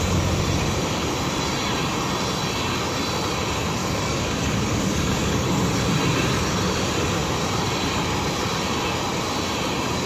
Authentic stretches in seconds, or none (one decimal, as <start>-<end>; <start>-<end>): 0.0-3.8; 5.6-10.1